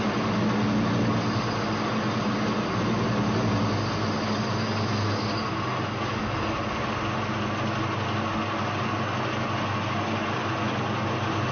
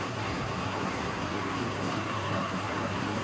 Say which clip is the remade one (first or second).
second